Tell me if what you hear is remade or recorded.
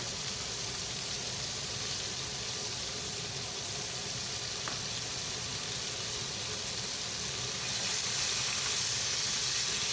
recorded